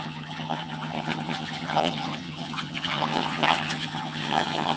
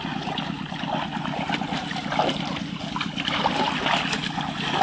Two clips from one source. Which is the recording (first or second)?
second